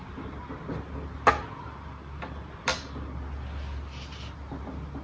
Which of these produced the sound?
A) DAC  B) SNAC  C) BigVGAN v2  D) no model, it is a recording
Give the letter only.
D